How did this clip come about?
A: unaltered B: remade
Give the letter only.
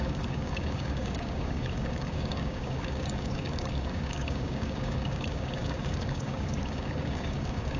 B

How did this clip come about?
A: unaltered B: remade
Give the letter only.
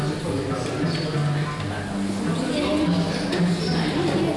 A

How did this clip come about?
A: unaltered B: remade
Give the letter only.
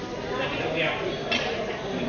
A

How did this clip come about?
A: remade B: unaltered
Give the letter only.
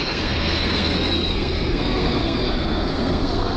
A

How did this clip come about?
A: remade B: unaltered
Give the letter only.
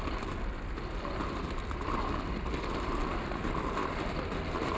B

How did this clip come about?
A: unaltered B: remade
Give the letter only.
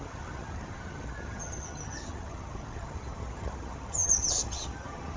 B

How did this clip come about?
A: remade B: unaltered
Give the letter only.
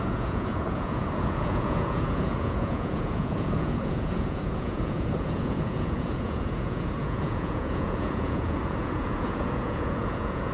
A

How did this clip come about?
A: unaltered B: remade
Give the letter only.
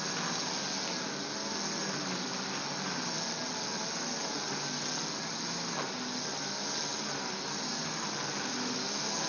A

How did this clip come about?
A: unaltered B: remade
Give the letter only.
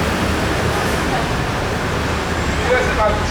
B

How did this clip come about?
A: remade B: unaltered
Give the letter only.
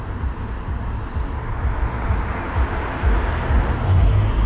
B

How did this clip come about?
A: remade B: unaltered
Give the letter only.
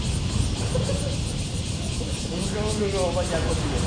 B